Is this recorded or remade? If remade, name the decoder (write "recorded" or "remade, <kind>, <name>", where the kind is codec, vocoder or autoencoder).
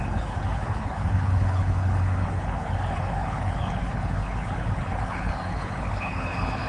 remade, codec, HILCodec